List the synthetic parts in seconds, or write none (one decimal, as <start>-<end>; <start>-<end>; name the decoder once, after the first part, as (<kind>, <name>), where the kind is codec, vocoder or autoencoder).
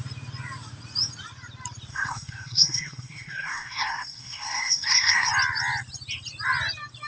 1.9-5.3 (codec, SNAC)